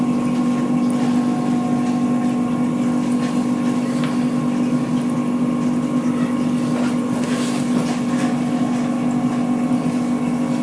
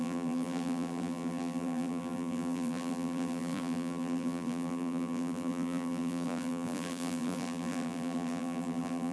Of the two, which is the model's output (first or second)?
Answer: second